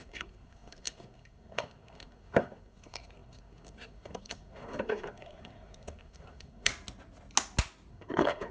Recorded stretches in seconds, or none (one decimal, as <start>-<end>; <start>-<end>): 6.7-7.9